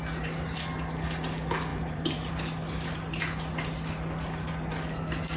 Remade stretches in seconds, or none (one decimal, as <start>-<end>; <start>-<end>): 1.7-2.3